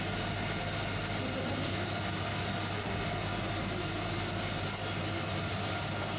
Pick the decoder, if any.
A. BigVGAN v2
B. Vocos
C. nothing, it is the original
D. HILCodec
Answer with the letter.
C